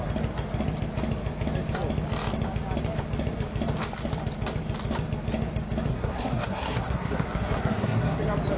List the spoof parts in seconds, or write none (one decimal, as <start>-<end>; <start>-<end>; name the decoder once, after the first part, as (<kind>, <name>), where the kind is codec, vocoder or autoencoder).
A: 5.9-8.2 (codec, SNAC)